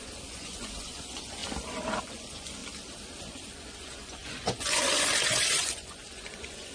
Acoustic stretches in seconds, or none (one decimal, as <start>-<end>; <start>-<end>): 1.4-2.0; 2.6-3.2